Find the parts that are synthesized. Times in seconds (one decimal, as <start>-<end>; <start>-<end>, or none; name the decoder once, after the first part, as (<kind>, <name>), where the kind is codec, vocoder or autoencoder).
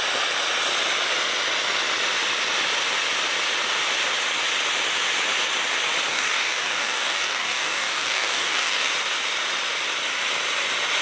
6.1-8.9 (codec, DAC)